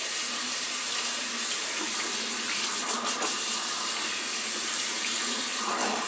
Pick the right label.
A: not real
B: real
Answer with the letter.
B